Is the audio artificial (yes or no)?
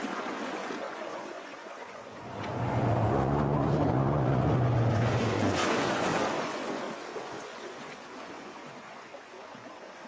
yes